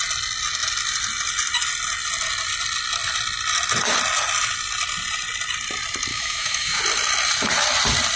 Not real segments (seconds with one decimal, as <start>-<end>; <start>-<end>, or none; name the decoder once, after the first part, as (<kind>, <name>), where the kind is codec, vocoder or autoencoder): 6.1-6.8 (autoencoder, DAC-VAE)